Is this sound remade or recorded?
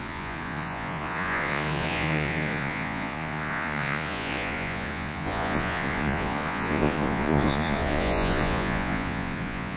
remade